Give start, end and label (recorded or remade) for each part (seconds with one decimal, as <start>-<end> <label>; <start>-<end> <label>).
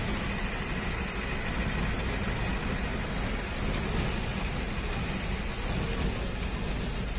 0.0-7.2 recorded